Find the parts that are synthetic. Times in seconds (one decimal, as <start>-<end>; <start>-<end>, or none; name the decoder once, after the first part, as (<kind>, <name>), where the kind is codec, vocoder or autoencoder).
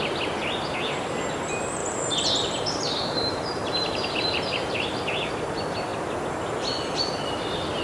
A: 1.8-5.3 (vocoder, BigVGAN v2)